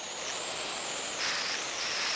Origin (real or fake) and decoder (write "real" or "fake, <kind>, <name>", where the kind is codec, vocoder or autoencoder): real